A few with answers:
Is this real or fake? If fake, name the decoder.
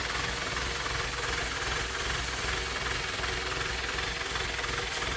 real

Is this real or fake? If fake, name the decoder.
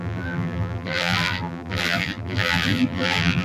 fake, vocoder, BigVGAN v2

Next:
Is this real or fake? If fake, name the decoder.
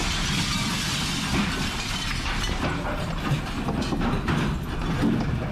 real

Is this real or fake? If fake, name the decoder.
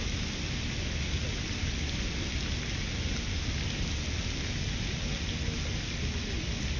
real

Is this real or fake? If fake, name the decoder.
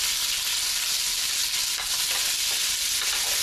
real